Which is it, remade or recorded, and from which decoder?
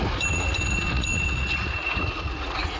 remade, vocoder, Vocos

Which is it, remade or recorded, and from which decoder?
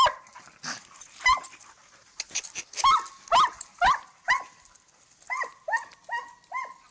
recorded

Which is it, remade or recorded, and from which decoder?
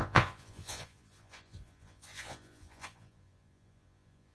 remade, vocoder, Vocos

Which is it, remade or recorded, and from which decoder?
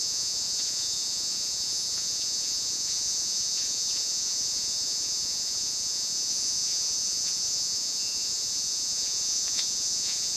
remade, vocoder, Vocos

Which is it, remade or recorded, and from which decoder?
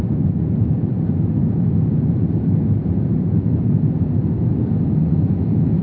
remade, vocoder, Vocos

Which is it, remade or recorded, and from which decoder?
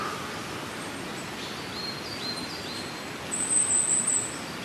recorded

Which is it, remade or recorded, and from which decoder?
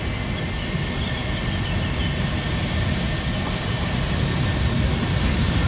recorded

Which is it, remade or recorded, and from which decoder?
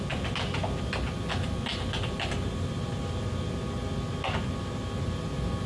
recorded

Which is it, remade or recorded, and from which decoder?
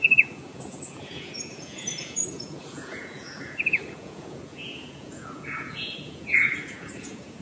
remade, vocoder, Vocos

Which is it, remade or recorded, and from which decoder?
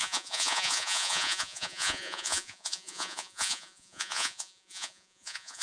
remade, vocoder, Vocos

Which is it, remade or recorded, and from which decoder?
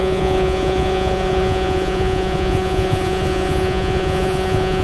remade, vocoder, Vocos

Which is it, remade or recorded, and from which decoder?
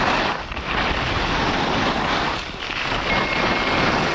recorded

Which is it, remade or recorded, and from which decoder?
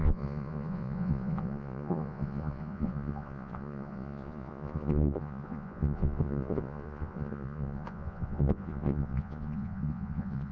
remade, vocoder, Vocos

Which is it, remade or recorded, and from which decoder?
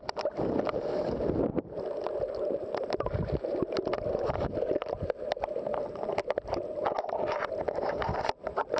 recorded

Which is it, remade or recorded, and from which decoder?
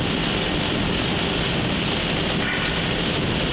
recorded